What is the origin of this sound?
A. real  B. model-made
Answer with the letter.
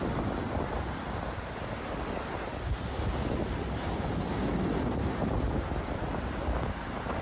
A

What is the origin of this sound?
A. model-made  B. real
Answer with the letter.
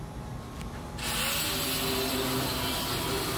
B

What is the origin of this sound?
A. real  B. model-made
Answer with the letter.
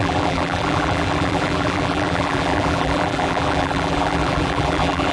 B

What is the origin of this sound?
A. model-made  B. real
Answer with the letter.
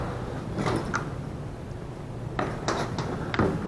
B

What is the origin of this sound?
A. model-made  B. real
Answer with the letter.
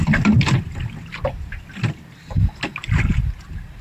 B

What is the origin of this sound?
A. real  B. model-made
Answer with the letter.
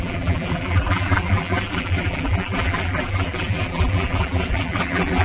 B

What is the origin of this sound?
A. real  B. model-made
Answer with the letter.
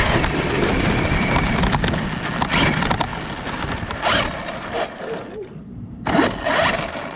A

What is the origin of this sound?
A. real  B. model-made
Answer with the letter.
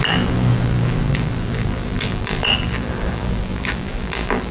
B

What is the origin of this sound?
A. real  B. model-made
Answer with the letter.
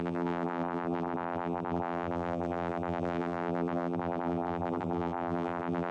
B